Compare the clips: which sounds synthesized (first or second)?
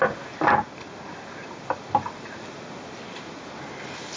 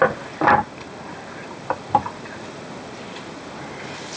second